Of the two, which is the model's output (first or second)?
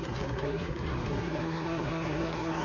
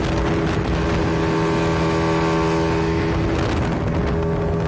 first